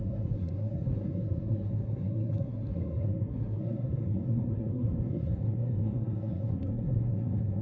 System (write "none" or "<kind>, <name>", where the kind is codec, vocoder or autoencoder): codec, SNAC